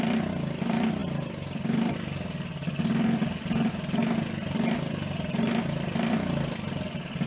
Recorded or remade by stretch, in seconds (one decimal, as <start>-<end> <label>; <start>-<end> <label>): 0.0-7.3 recorded

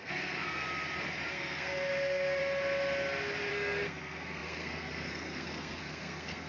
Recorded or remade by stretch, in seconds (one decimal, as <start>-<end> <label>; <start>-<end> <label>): 0.0-0.6 remade; 0.6-1.3 recorded; 1.3-2.4 remade; 2.4-3.5 recorded; 3.5-6.5 remade

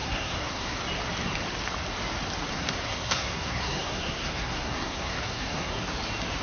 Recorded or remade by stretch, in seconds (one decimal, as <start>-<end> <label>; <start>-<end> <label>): 0.0-0.8 remade; 0.8-2.5 recorded; 2.5-5.8 remade; 5.8-6.4 recorded